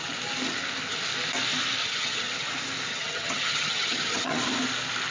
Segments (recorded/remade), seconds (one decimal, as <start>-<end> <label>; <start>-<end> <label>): 0.0-1.8 recorded; 1.8-2.5 remade; 2.5-2.9 recorded; 2.9-4.4 remade; 4.4-5.1 recorded

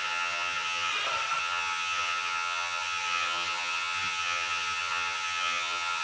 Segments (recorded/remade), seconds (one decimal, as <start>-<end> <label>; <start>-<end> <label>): 0.0-0.9 remade; 0.9-1.4 recorded; 1.4-6.0 remade

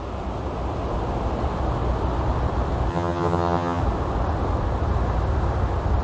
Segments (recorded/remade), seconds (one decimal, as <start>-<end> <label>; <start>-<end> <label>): 0.0-2.9 recorded; 2.9-3.8 remade; 3.8-6.0 recorded

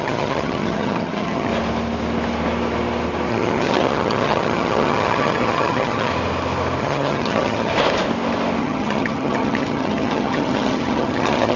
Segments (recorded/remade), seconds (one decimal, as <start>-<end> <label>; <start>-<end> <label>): 0.0-1.5 remade; 1.5-3.3 recorded; 3.3-6.1 remade; 6.1-6.8 recorded; 6.8-7.7 remade; 7.7-8.6 recorded; 8.6-11.6 remade

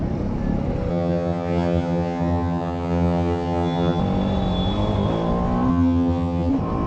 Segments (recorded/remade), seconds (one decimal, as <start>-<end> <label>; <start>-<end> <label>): 0.0-0.9 recorded; 0.9-4.0 remade; 4.0-5.7 recorded; 5.7-6.5 remade; 6.5-6.9 recorded

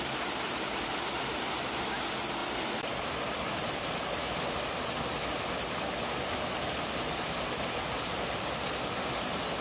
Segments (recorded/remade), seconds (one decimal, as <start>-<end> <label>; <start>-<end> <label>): 0.0-9.6 recorded

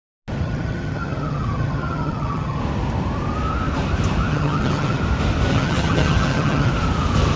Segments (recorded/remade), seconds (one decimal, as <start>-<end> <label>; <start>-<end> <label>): 0.0-0.4 recorded; 0.4-2.6 remade; 2.6-4.3 recorded; 4.3-5.0 remade; 5.0-5.5 recorded; 5.5-6.7 remade; 6.7-7.4 recorded

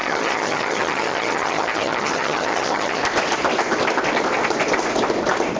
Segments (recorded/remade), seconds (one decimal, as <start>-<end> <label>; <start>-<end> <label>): 0.0-3.0 remade; 3.0-5.6 recorded